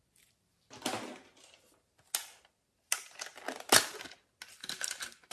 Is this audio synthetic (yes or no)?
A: no